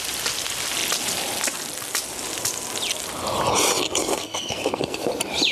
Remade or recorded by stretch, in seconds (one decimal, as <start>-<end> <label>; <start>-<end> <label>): 0.0-4.0 recorded; 4.0-5.1 remade; 5.1-5.5 recorded